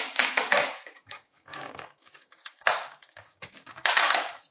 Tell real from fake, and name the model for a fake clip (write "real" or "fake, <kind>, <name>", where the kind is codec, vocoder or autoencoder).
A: fake, codec, DAC